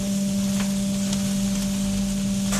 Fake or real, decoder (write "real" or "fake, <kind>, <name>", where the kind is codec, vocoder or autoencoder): real